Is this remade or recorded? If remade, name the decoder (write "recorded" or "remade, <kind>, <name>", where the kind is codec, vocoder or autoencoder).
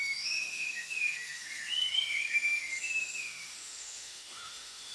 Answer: remade, autoencoder, DAC-VAE